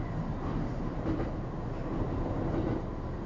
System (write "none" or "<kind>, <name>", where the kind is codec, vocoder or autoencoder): none